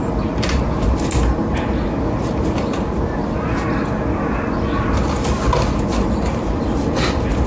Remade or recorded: recorded